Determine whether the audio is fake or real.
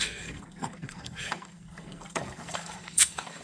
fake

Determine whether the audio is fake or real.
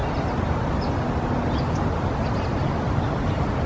real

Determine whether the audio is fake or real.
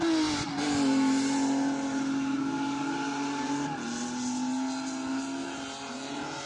real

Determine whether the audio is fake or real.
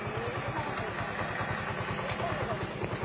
real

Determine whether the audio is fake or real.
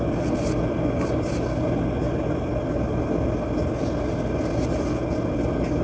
real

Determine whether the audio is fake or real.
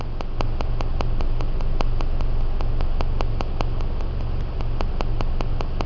real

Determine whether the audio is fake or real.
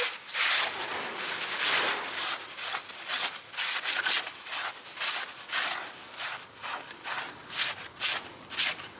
real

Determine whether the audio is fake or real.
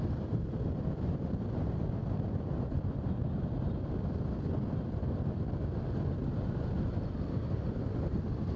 real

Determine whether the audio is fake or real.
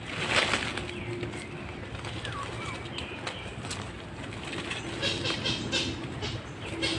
real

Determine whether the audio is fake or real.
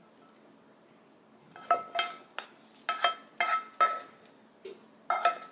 real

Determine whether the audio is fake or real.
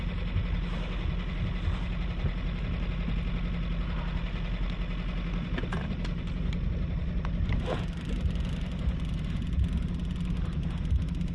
real